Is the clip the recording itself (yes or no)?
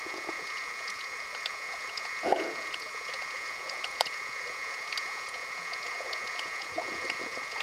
no